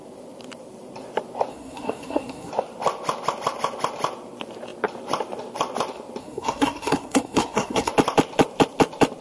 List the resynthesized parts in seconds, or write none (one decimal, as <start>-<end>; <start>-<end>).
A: 1.5-2.5; 6.2-7.9